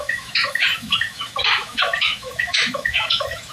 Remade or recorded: remade